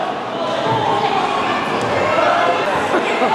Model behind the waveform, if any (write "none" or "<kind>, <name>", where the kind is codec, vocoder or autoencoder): none